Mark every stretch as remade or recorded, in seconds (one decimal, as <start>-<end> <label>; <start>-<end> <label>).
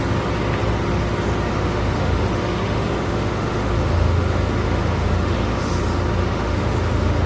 0.0-1.5 recorded; 1.5-5.8 remade; 5.8-6.2 recorded; 6.2-7.3 remade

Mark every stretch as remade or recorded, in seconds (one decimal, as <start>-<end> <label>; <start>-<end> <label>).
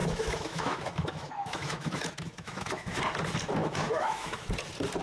0.0-3.0 remade; 3.0-3.6 recorded; 3.6-4.5 remade; 4.5-5.0 recorded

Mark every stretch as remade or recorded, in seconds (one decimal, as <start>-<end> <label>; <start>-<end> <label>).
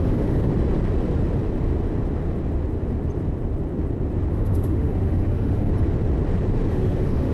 0.0-0.5 remade; 0.5-4.3 recorded; 4.3-5.7 remade; 5.7-6.7 recorded; 6.7-7.3 remade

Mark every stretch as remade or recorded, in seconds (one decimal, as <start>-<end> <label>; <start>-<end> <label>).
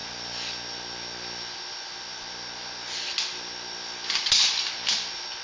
0.0-5.4 recorded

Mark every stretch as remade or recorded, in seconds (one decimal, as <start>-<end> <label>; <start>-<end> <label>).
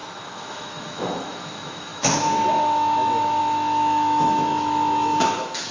0.0-5.7 remade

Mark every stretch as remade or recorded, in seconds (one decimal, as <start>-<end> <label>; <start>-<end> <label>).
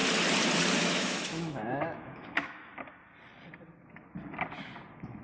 0.0-0.8 recorded; 0.8-2.7 remade; 2.7-5.2 recorded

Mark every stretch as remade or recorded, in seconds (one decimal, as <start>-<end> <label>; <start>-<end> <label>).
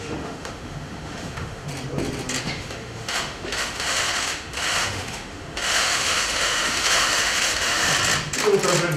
0.0-1.7 remade; 1.7-2.4 recorded; 2.4-7.9 remade; 7.9-9.0 recorded